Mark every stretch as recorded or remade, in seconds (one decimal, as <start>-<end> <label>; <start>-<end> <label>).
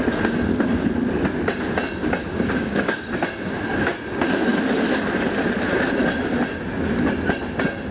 0.0-2.2 recorded; 2.2-3.0 remade; 3.0-7.9 recorded